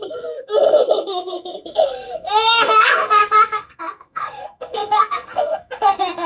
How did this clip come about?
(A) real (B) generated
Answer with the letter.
B